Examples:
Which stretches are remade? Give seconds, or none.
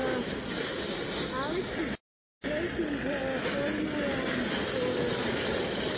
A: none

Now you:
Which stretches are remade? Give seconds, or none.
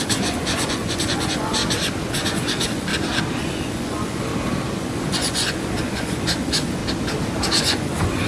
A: 0.0-1.6 (vocoder, Vocos); 2.1-2.9; 3.4-4.3; 4.8-6.8; 7.6-8.3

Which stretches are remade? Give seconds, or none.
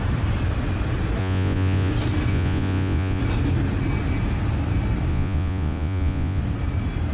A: 1.2-1.9 (vocoder, Vocos); 2.3-3.2; 5.1-6.4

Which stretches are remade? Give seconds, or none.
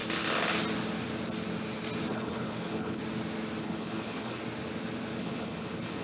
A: 2.1-3.0 (codec, HILCodec); 3.6-4.4; 5.2-6.0